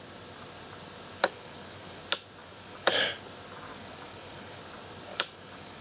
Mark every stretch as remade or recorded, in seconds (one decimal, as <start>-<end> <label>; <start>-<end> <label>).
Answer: 0.0-1.2 recorded; 1.2-2.0 remade; 2.0-2.4 recorded; 2.4-3.2 remade; 3.2-3.7 recorded; 3.7-4.6 remade; 4.6-5.1 recorded; 5.1-5.8 remade

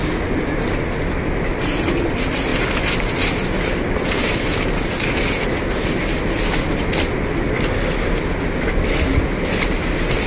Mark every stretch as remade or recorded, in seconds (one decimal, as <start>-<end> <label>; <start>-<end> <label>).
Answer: 0.0-10.3 recorded

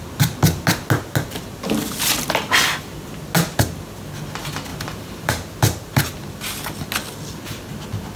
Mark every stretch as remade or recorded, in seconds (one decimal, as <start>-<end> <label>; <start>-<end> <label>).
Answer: 0.0-4.7 recorded; 4.7-5.3 remade; 5.3-8.2 recorded

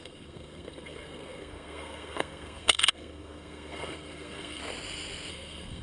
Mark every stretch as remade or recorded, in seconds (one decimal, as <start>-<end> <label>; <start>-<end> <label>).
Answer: 0.0-4.6 remade; 4.6-5.3 recorded; 5.3-5.8 remade